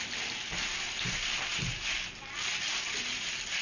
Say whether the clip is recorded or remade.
recorded